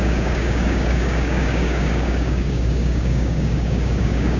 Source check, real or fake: fake